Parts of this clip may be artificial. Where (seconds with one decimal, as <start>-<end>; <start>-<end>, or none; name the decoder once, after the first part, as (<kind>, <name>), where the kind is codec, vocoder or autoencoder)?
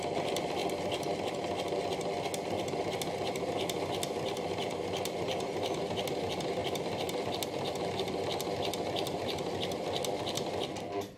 none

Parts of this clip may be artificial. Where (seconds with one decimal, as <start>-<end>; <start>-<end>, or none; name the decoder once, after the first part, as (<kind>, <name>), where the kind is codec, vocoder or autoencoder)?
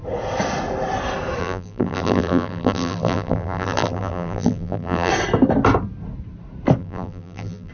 1.4-5.1 (vocoder, BigVGAN v2); 6.8-7.7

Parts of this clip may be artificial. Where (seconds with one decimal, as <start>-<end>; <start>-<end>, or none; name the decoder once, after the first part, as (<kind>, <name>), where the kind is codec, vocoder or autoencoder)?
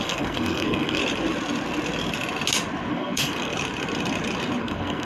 0.0-1.0 (codec, SNAC); 2.9-3.5; 4.6-5.0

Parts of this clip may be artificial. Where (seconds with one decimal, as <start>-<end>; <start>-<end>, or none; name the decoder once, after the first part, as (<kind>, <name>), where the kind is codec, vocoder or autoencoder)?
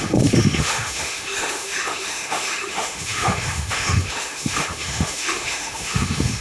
0.0-6.4 (autoencoder, DAC-VAE)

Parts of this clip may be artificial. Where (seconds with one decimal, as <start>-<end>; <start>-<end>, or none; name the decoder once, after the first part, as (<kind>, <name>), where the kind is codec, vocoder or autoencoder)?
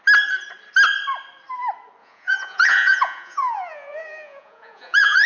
2.0-5.3 (vocoder, Vocos)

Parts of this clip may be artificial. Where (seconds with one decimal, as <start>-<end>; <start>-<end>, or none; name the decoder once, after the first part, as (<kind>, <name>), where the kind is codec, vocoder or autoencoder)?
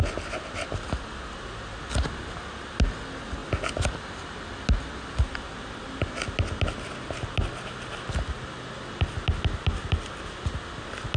none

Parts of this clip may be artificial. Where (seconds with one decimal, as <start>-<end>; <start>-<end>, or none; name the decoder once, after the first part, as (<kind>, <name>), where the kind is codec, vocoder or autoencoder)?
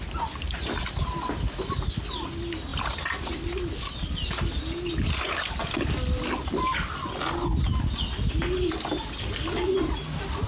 none